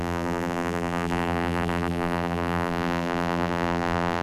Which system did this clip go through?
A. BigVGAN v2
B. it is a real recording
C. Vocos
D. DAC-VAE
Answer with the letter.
A